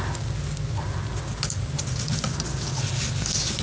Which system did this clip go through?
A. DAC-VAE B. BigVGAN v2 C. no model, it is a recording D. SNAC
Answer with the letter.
C